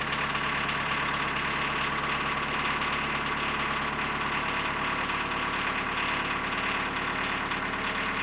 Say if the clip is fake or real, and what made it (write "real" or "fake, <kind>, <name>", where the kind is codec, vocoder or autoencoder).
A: real